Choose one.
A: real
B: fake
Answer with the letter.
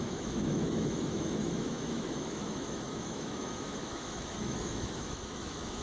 B